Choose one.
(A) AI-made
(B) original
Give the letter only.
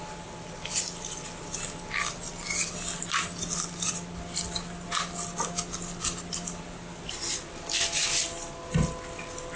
B